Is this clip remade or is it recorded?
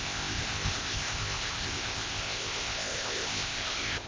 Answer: remade